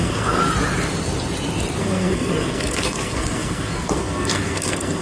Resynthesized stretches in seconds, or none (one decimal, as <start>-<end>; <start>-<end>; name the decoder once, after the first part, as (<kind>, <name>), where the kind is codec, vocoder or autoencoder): 0.0-0.4 (codec, SNAC); 1.8-5.0